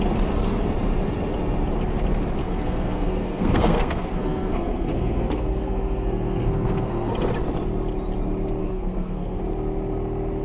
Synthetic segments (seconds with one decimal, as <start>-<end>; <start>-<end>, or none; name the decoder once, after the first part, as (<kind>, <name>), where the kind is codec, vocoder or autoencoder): 2.4-7.1 (codec, SNAC); 8.6-9.4